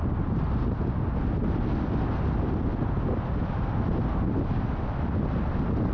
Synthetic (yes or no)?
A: no